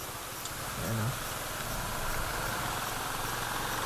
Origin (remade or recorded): recorded